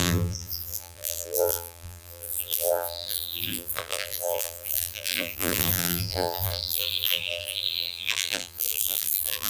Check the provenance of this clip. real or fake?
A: fake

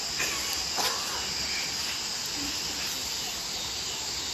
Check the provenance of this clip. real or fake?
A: real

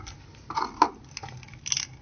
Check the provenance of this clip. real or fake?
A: real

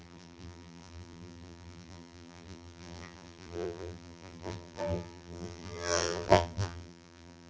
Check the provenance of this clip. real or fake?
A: fake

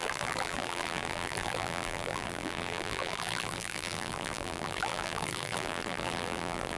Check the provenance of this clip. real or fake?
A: fake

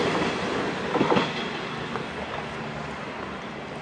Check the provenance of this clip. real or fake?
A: real